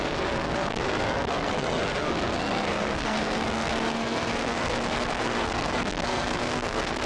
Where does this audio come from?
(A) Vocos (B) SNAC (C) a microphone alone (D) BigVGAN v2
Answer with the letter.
B